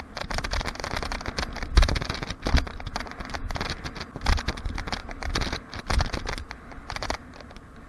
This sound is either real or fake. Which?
real